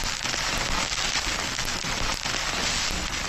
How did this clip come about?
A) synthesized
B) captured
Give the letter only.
B